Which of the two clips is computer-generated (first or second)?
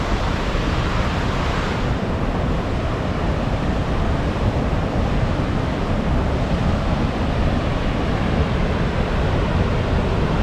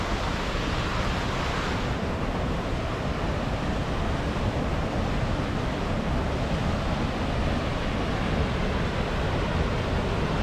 first